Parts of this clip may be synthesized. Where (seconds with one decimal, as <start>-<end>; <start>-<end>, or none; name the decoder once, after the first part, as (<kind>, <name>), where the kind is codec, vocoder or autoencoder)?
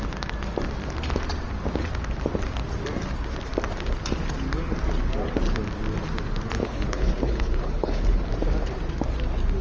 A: 6.6-8.3 (codec, HILCodec)